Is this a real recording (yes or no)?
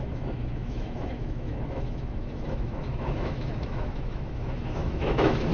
no